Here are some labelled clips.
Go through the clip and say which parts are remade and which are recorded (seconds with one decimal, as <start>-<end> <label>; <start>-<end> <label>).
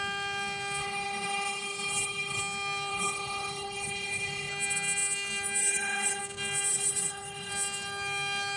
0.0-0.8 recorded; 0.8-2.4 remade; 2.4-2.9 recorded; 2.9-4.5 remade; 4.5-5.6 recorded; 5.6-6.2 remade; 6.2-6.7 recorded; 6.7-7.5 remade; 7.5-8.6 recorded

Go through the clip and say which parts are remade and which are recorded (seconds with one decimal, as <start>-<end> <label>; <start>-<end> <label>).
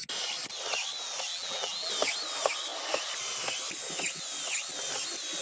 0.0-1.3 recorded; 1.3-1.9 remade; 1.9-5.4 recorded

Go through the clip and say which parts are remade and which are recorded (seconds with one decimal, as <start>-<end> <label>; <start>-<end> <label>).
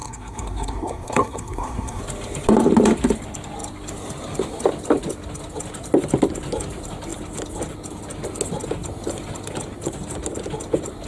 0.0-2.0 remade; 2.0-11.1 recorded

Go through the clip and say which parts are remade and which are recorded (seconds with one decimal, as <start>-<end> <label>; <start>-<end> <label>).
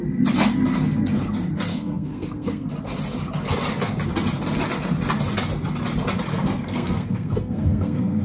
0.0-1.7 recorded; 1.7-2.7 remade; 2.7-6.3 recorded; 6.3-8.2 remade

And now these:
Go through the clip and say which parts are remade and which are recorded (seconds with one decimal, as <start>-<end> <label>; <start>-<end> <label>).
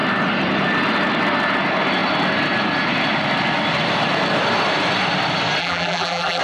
0.0-5.6 recorded; 5.6-6.4 remade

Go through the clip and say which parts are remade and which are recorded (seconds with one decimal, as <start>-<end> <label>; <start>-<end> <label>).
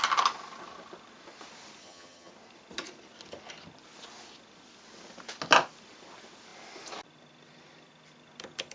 0.0-1.8 recorded; 1.8-2.3 remade; 2.3-8.7 recorded